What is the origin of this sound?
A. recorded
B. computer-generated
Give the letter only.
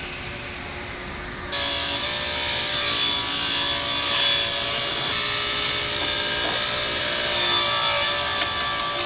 A